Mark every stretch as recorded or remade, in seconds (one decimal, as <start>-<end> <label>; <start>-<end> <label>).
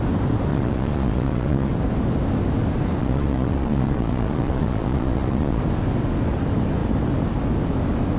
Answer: 0.0-0.5 recorded; 0.5-1.7 remade; 1.7-3.0 recorded; 3.0-5.6 remade; 5.6-8.2 recorded